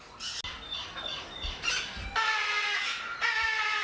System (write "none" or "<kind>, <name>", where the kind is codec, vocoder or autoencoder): none